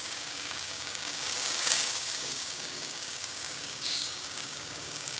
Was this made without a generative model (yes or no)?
no